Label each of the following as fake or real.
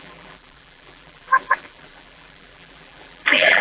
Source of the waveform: fake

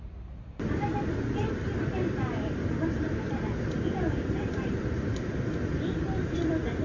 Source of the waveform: fake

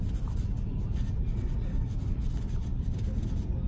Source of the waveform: real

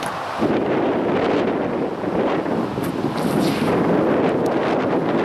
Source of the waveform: real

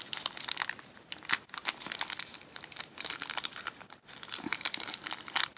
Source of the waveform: fake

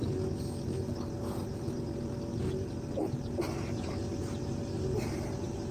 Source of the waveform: real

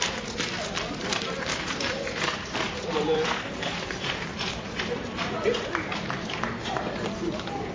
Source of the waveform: fake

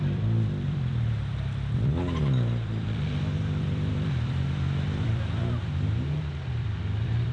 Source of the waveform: fake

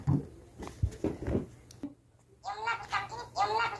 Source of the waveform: real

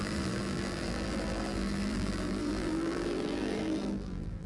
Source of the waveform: fake